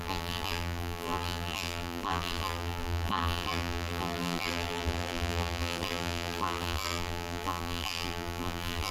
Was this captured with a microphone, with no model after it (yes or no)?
no